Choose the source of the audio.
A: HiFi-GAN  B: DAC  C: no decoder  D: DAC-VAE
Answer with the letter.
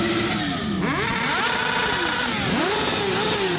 C